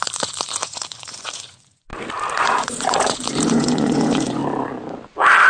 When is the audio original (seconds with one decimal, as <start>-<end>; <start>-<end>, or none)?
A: 1.9-2.4; 4.4-5.5